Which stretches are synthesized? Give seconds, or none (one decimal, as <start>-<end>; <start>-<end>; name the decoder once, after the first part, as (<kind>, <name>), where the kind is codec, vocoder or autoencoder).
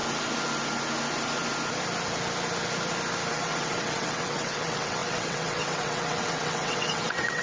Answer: 3.3-7.4 (vocoder, WaveNeXt)